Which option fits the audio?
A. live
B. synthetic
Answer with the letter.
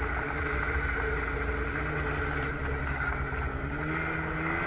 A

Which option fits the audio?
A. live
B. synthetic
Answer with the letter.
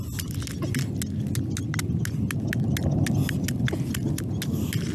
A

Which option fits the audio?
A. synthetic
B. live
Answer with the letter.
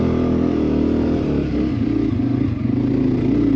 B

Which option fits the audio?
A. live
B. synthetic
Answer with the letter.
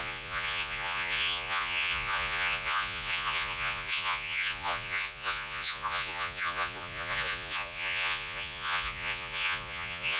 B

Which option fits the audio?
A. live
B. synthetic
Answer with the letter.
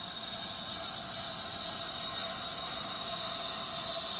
A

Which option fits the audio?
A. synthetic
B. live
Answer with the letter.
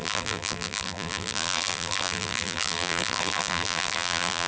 A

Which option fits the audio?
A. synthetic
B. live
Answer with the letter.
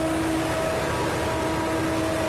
B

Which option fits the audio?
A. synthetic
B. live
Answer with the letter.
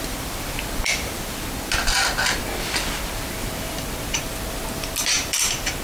A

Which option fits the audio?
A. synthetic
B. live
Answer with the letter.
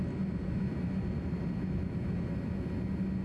B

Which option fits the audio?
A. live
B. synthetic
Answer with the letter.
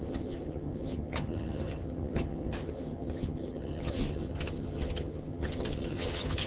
B